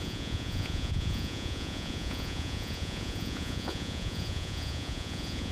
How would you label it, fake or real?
fake